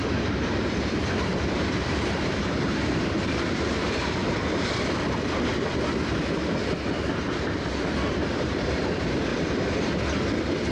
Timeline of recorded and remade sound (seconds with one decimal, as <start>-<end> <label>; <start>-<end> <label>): 0.0-4.2 remade; 4.2-8.1 recorded; 8.1-9.3 remade; 9.3-10.7 recorded

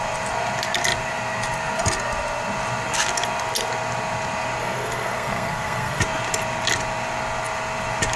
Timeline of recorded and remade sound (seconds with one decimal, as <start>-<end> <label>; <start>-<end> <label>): 0.0-4.6 recorded; 4.6-6.0 remade; 6.0-8.2 recorded

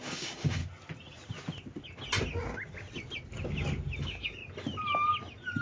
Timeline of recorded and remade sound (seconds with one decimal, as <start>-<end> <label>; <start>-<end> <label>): 0.0-0.6 remade; 0.6-4.0 recorded; 4.0-4.4 remade; 4.4-5.6 recorded

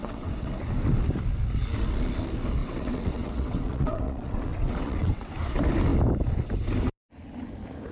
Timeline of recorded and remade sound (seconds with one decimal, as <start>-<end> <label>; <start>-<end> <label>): 0.0-0.5 remade; 0.5-2.6 recorded; 2.6-5.3 remade; 5.3-7.9 recorded

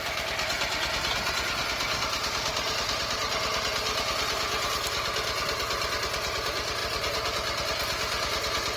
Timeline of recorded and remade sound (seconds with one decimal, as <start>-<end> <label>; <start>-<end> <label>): 0.0-8.8 recorded

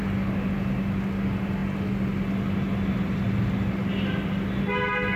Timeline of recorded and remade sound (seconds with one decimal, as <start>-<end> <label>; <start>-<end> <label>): 0.0-5.2 recorded

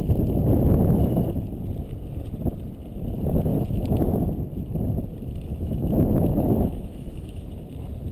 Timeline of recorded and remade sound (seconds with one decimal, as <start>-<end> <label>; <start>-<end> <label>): 0.0-5.5 recorded; 5.5-7.4 remade; 7.4-8.1 recorded